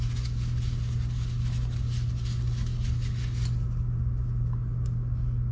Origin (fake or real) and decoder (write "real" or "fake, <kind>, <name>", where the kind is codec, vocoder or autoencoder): real